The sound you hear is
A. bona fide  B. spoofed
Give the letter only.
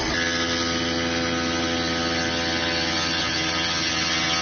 A